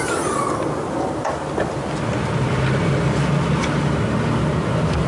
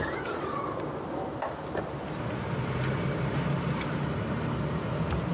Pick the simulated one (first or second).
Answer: second